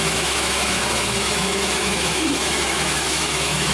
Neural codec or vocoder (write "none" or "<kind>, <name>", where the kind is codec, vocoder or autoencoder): autoencoder, DAC-VAE